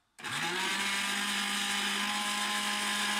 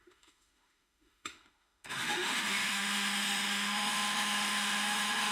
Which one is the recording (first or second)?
first